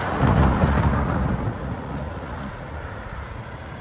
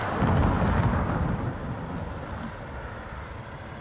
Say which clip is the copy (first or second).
first